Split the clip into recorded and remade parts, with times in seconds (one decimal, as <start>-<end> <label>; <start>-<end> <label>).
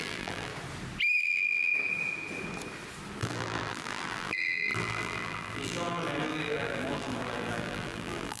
0.0-0.5 remade; 0.5-1.2 recorded; 1.2-1.7 remade; 1.7-3.2 recorded; 3.2-8.4 remade